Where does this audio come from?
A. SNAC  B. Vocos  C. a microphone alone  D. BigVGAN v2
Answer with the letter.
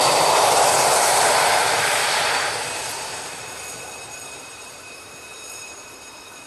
D